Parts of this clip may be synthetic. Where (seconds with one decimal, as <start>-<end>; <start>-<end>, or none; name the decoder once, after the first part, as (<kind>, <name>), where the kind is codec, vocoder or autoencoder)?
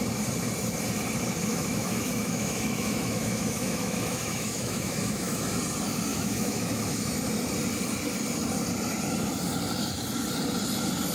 1.5-5.4 (autoencoder, DAC-VAE); 6.1-7.1